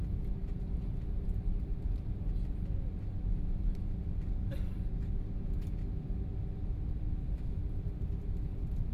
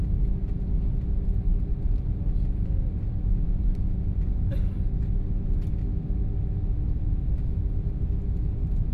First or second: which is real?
second